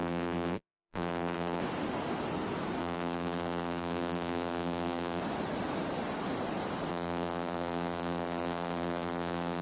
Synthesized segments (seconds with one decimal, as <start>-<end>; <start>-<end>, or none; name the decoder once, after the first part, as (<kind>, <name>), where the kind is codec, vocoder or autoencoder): 0.0-1.6 (vocoder, BigVGAN v2); 2.8-5.2; 6.9-9.6